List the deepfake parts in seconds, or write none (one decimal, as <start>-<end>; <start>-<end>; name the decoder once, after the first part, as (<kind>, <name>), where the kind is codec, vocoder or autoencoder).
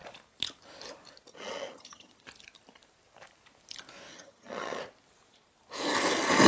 1.3-2.1 (vocoder, HiFi-GAN); 4.1-4.8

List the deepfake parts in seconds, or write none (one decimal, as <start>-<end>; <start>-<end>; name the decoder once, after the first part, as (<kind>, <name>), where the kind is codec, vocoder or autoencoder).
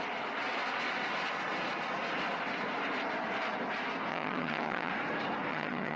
4.1-4.9 (vocoder, HiFi-GAN); 5.5-6.0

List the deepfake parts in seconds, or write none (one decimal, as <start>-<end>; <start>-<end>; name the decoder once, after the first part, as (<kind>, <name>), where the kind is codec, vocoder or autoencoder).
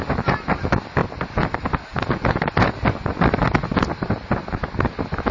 none